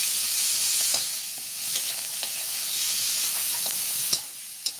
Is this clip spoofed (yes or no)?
yes